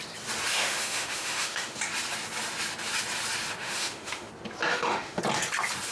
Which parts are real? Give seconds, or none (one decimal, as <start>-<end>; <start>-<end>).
0.0-0.5; 1.8-3.6; 4.3-4.7; 5.2-5.9